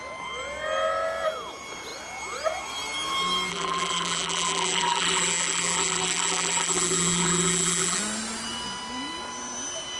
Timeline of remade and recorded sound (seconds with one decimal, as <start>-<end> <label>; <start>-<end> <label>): 0.0-3.5 recorded; 3.5-8.0 remade; 8.0-10.0 recorded